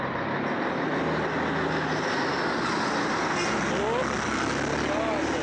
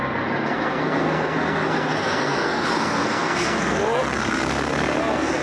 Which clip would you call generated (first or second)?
second